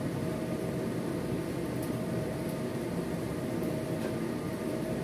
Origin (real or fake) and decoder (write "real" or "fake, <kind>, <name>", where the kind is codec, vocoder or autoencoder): real